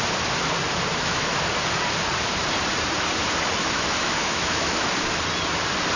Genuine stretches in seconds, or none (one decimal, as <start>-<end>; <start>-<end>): 0.0-0.9; 1.4-3.6; 4.9-6.0